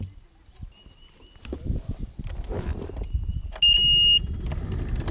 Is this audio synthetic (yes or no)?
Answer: no